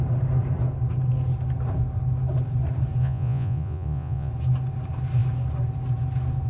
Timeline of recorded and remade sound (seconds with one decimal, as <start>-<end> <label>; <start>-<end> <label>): 0.0-3.0 recorded; 3.0-4.3 remade; 4.3-6.5 recorded